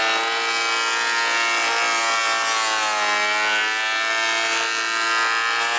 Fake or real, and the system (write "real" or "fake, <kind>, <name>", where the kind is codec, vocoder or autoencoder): real